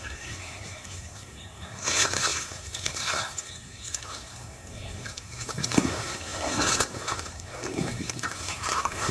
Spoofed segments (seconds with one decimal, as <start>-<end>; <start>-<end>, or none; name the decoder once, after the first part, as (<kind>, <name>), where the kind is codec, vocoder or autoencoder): 0.0-9.1 (codec, SNAC)